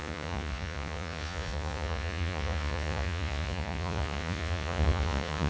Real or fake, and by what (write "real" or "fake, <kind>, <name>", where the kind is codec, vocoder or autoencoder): fake, vocoder, Vocos